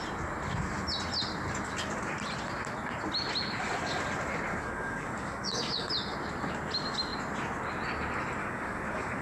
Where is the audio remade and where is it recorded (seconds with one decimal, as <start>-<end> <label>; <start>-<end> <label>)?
0.0-4.5 recorded; 4.5-5.9 remade; 5.9-8.4 recorded; 8.4-9.2 remade